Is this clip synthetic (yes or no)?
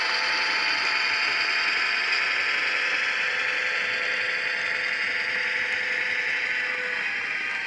no